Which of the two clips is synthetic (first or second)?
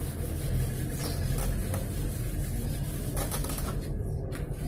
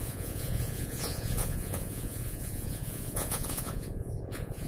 second